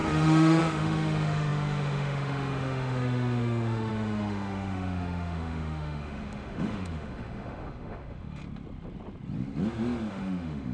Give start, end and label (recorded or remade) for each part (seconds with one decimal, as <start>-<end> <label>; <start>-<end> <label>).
0.0-8.4 remade; 8.4-10.1 recorded; 10.1-10.7 remade